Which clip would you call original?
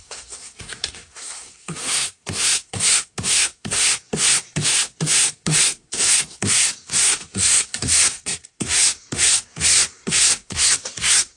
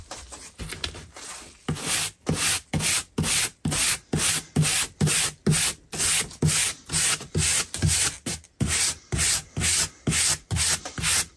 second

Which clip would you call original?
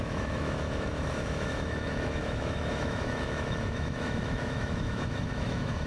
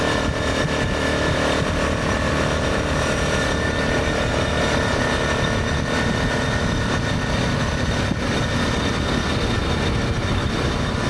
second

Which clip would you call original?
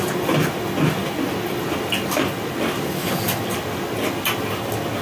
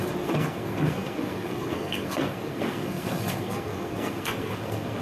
first